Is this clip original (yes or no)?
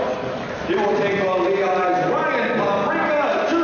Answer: yes